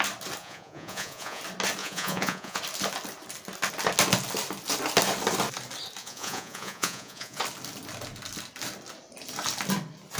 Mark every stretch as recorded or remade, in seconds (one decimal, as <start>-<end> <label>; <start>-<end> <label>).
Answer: 0.0-0.4 recorded; 0.4-1.4 remade; 1.4-1.8 recorded; 1.8-2.6 remade; 2.6-6.0 recorded; 6.0-7.4 remade; 7.4-10.2 recorded